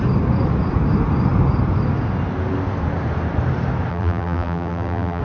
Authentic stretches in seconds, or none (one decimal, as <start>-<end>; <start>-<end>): 0.0-3.9